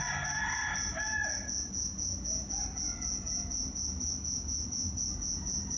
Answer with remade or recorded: recorded